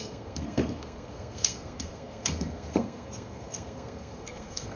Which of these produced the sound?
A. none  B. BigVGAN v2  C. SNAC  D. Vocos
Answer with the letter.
C